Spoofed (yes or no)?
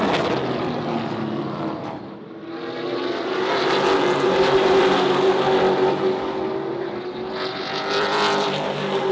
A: no